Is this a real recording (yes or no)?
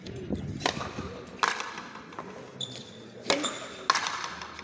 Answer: yes